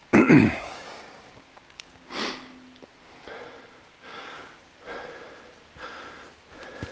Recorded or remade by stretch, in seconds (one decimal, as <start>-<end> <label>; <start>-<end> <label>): 0.0-2.2 remade; 2.2-3.8 recorded; 3.8-4.8 remade; 4.8-6.9 recorded